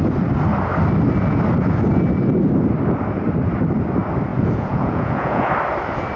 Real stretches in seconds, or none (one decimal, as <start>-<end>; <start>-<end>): 0.0-4.3; 5.5-6.2